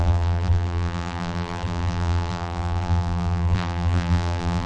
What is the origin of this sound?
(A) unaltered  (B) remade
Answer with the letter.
B